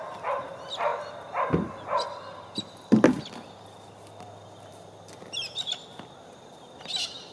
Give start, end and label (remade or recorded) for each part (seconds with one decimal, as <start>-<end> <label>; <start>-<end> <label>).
0.0-7.3 recorded